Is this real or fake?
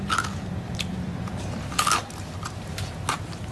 real